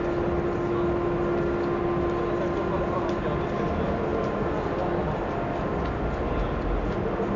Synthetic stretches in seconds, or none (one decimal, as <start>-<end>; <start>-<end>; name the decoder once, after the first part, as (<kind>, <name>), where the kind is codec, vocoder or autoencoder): none